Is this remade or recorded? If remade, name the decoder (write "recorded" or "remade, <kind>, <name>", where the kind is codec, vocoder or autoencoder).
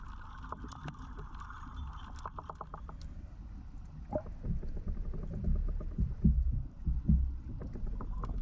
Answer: recorded